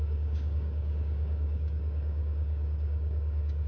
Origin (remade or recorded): remade